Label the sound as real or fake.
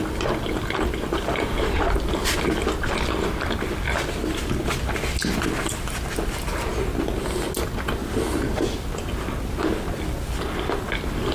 real